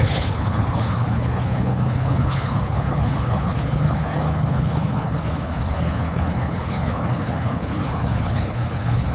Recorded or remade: remade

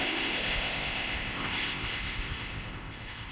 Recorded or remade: remade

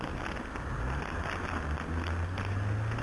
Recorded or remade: recorded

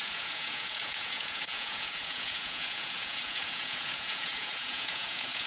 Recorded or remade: remade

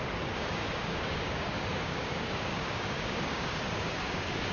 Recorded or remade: remade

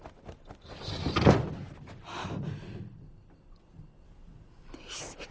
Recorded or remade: recorded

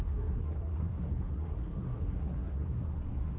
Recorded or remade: remade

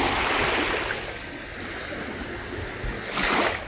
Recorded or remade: recorded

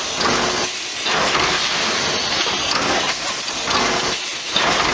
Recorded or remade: recorded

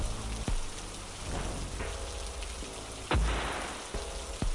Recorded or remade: recorded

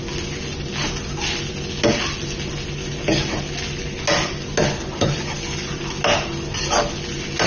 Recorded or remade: recorded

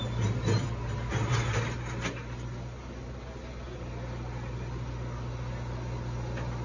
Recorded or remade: recorded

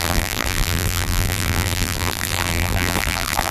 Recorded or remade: remade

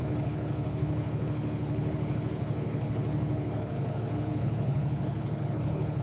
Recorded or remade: remade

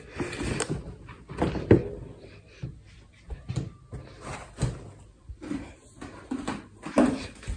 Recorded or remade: recorded